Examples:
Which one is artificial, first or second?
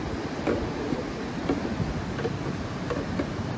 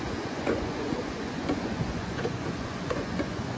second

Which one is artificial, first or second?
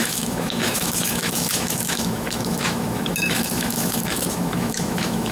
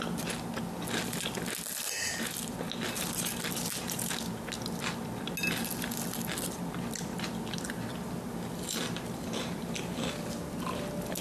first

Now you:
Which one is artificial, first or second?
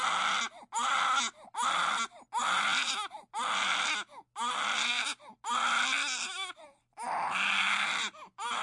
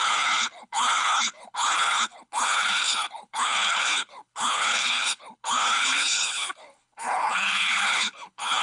second